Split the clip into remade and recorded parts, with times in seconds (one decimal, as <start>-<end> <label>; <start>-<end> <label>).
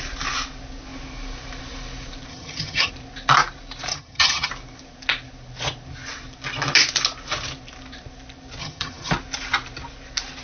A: 0.0-2.3 recorded; 2.3-2.9 remade; 2.9-3.9 recorded; 3.9-4.5 remade; 4.5-8.6 recorded; 8.6-9.1 remade; 9.1-10.4 recorded